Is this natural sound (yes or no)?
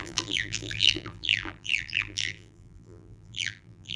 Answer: no